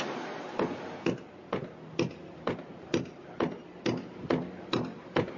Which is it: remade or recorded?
recorded